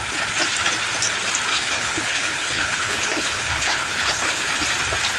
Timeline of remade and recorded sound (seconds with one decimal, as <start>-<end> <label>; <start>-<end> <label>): 0.0-1.5 recorded; 1.5-4.6 remade; 4.6-5.2 recorded